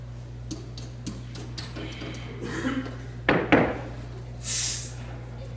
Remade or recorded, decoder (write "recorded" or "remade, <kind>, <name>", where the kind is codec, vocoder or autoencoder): recorded